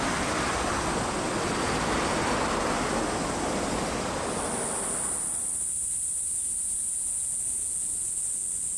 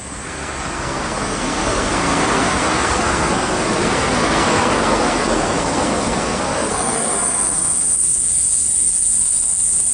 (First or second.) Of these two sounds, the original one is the first